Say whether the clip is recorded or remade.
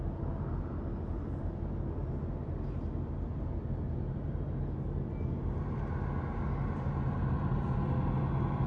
recorded